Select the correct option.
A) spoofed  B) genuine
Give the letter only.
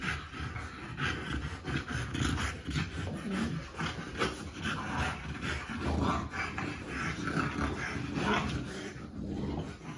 B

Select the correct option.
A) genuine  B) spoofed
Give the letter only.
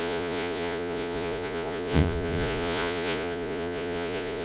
B